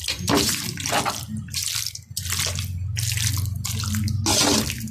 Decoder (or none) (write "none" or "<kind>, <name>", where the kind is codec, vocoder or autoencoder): none